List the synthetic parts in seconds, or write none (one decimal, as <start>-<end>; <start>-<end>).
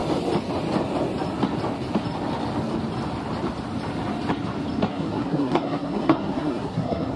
4.9-7.2